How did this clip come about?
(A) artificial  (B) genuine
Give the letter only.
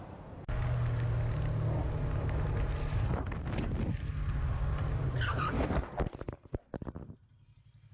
B